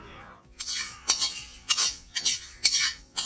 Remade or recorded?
remade